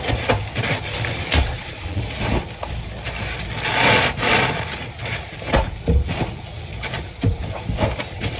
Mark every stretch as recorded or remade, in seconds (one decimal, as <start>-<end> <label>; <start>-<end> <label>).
0.0-1.5 recorded; 1.5-2.0 remade; 2.0-8.4 recorded